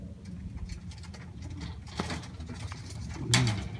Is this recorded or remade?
recorded